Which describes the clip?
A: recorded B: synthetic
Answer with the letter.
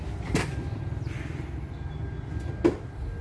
A